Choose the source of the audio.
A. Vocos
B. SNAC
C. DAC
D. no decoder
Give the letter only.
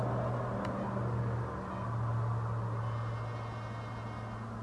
D